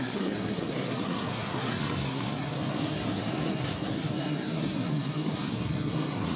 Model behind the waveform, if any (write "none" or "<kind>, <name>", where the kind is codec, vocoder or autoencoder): codec, SNAC